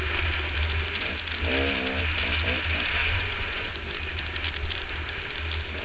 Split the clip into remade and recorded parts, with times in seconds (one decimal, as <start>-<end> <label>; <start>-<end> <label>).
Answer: 0.0-3.0 recorded; 3.0-3.7 remade; 3.7-5.8 recorded